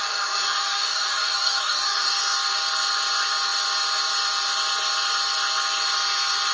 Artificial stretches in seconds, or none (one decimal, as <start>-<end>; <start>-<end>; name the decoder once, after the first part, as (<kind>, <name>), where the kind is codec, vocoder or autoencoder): 0.0-2.2 (codec, DAC)